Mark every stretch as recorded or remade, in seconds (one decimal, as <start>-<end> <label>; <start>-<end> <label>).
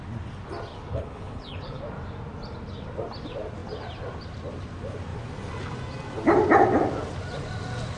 0.0-0.7 recorded; 0.7-1.8 remade; 1.8-8.0 recorded